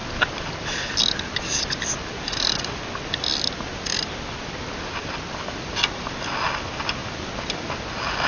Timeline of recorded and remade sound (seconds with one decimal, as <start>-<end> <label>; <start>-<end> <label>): 0.0-8.3 recorded